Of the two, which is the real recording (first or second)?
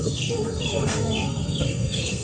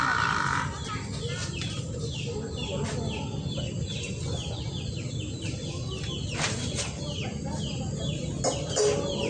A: second